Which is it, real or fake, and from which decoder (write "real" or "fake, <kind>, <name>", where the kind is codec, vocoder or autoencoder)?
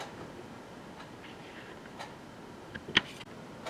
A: real